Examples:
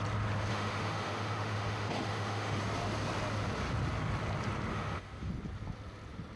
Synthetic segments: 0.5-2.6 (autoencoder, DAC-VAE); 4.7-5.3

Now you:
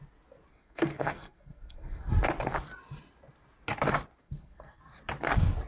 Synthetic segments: 0.5-2.1 (codec, SNAC); 4.2-4.8

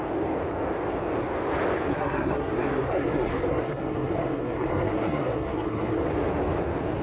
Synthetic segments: 1.9-6.1 (codec, SNAC)

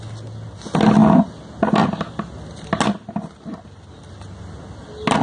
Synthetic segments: none

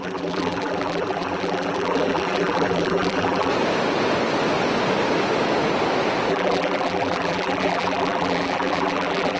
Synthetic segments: 0.0-3.5 (vocoder, BigVGAN v2); 6.3-9.4

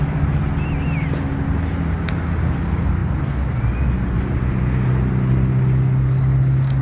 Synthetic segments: none

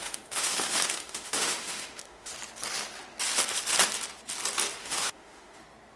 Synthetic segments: 0.0-2.3 (autoencoder, DAC-VAE); 4.8-5.6

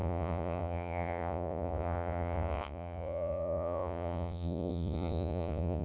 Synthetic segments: 0.0-5.8 (vocoder, Vocos)